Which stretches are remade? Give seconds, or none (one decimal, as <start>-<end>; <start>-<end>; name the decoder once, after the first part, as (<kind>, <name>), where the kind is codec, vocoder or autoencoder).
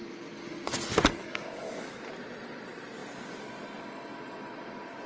1.2-2.0 (codec, DAC)